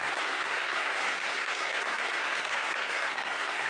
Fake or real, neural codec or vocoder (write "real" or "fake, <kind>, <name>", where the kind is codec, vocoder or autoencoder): fake, codec, SNAC